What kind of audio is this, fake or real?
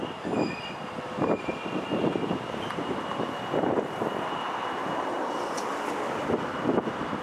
real